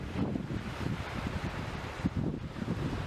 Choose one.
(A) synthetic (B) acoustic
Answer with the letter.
B